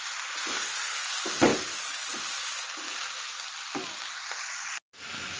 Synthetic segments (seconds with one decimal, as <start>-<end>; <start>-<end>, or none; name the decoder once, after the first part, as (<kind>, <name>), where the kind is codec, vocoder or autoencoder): 0.5-1.0 (codec, SNAC)